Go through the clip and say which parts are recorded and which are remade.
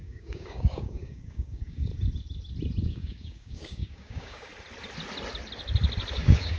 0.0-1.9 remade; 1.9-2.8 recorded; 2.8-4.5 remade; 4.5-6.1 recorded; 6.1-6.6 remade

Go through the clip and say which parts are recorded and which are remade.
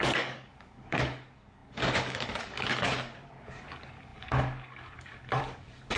0.0-6.0 remade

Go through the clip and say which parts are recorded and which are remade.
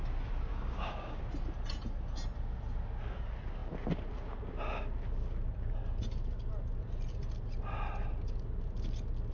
0.0-0.5 recorded; 0.5-1.2 remade; 1.2-9.3 recorded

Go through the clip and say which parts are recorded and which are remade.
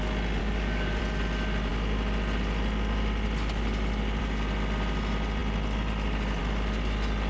0.0-0.4 recorded; 0.4-1.0 remade; 1.0-7.3 recorded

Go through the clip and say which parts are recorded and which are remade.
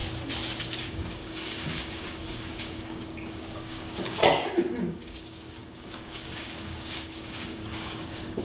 0.0-0.6 recorded; 0.6-4.2 remade; 4.2-4.8 recorded; 4.8-8.4 remade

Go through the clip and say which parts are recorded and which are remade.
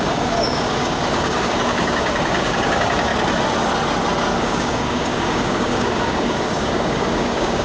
0.0-3.1 remade; 3.1-4.4 recorded; 4.4-7.6 remade